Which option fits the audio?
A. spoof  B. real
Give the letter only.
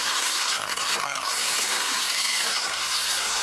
A